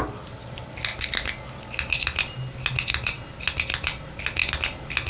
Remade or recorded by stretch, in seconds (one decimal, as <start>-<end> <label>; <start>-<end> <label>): 0.0-5.1 recorded